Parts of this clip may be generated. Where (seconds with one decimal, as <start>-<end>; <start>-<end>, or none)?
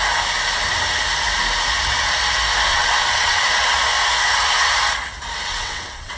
2.7-3.5; 5.5-6.2